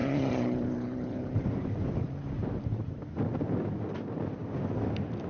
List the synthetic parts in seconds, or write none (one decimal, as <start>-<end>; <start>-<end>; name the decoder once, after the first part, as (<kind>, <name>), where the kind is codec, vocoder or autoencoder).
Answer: 0.0-3.0 (vocoder, BigVGAN v2)